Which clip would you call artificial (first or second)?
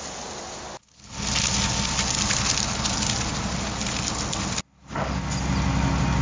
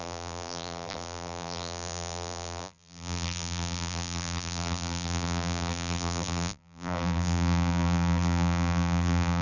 second